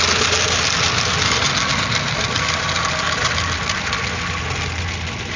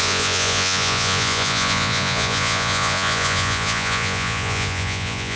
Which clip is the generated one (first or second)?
second